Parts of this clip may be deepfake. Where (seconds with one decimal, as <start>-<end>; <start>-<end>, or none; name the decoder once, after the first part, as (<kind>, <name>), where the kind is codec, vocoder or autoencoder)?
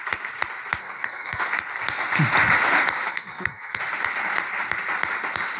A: 0.8-1.4 (codec, SNAC); 3.1-3.8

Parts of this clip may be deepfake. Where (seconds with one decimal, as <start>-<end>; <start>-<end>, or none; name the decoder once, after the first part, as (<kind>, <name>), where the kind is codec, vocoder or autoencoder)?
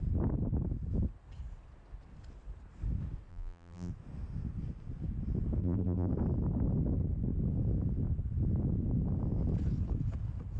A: 3.3-3.9 (vocoder, BigVGAN v2); 5.6-6.1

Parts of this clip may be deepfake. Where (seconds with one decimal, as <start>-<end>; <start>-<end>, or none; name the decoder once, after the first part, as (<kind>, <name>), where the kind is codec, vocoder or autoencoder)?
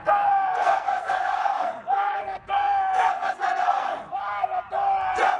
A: 0.0-4.2 (codec, SNAC)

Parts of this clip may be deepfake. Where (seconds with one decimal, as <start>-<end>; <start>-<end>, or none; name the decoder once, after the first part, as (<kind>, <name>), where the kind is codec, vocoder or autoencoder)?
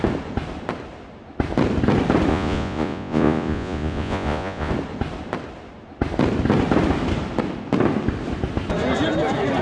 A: 2.3-4.7 (vocoder, Vocos)